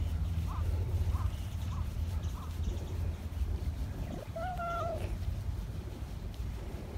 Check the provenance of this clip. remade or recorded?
remade